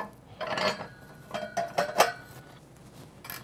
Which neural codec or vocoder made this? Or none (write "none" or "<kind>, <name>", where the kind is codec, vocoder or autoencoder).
none